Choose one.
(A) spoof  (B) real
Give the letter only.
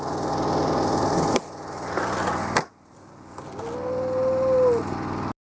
B